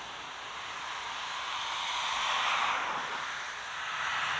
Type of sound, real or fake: real